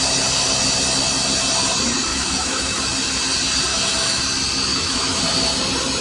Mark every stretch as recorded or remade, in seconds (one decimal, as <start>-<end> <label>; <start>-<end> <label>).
0.0-2.1 recorded; 2.1-2.8 remade; 2.8-3.7 recorded; 3.7-4.2 remade; 4.2-4.7 recorded; 4.7-5.2 remade; 5.2-6.0 recorded